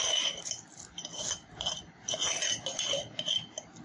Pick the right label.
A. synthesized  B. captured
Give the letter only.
B